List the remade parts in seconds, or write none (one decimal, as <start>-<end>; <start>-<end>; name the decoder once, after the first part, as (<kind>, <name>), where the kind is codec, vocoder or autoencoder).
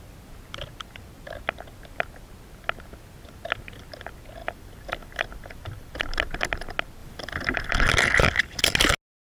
4.4-6.0 (vocoder, BigVGAN v2); 7.0-7.9